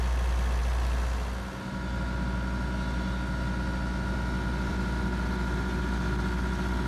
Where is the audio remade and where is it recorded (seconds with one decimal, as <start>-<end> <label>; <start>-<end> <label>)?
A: 0.0-0.6 remade; 0.6-4.7 recorded; 4.7-6.9 remade